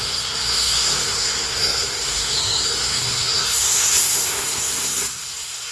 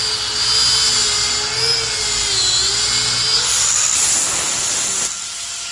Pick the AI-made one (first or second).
first